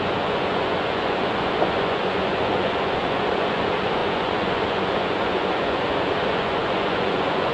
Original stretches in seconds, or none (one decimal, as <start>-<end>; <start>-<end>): none